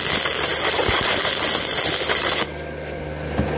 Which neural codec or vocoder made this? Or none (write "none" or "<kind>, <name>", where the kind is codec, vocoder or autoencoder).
none